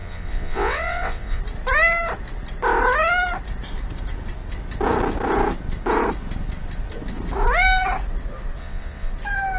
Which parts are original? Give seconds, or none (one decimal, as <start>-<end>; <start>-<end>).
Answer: 1.4-8.6; 9.1-9.6

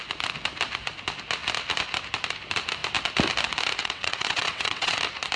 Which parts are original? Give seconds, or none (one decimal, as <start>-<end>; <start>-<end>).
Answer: 0.0-3.8; 5.0-5.4

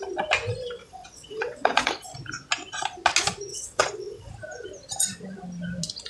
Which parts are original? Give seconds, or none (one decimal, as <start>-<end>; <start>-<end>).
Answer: 0.0-0.8; 1.9-3.5; 4.3-6.1

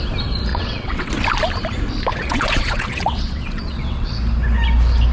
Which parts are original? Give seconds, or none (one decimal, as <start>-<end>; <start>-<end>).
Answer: 0.0-0.5; 1.1-2.1; 4.1-5.1

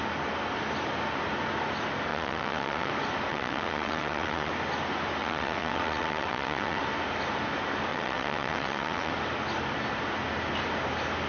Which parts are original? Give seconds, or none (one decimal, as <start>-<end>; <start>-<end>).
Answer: 0.0-2.1; 2.9-3.3; 4.5-5.2; 6.8-7.9; 9.1-11.3

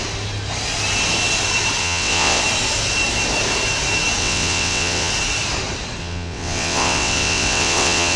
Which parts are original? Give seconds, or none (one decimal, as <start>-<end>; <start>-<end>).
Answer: 0.0-1.8; 2.4-4.2; 5.1-6.0

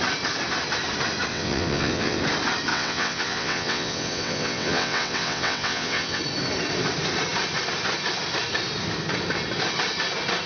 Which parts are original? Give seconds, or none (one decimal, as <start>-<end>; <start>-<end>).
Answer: 0.0-1.3; 2.2-2.7; 6.2-10.5